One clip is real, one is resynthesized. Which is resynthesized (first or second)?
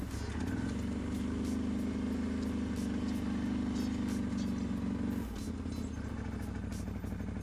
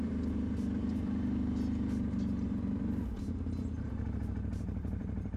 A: second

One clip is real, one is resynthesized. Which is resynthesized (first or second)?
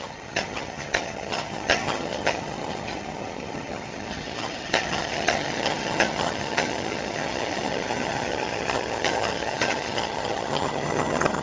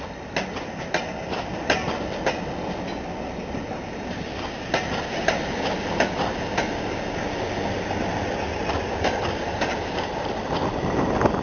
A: first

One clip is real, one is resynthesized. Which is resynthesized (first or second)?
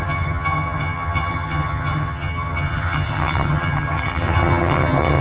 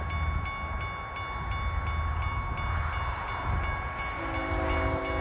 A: first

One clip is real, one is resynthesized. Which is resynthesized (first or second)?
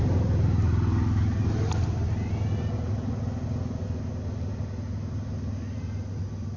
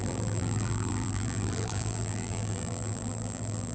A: second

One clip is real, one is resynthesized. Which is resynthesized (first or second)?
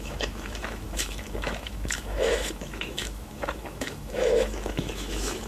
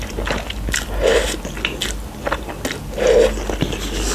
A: first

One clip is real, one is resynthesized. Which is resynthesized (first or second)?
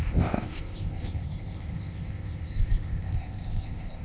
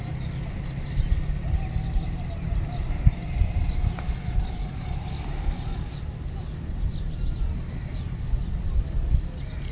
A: first